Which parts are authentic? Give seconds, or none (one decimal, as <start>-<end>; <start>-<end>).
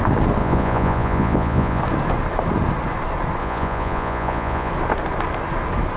0.0-0.4; 1.8-3.4; 4.7-6.0